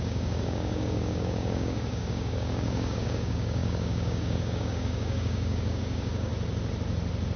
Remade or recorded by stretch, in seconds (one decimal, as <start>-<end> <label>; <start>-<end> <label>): 0.0-6.3 remade; 6.3-7.4 recorded